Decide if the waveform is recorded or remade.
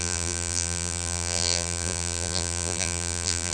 remade